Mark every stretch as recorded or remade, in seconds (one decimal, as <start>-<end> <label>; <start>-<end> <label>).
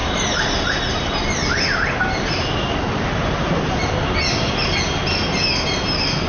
0.0-6.3 recorded